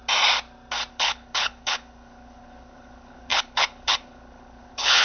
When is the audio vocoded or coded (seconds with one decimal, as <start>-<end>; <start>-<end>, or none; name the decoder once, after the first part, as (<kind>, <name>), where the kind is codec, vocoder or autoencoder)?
0.9-5.0 (codec, HILCodec)